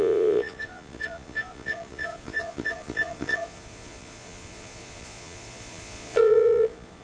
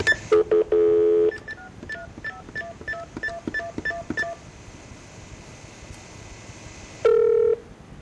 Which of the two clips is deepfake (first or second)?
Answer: first